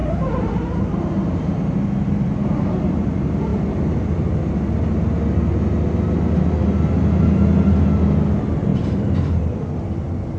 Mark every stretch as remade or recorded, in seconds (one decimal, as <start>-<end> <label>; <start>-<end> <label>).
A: 0.0-0.5 remade; 0.5-8.7 recorded; 8.7-9.4 remade; 9.4-10.4 recorded